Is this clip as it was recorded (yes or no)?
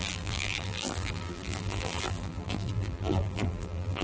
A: no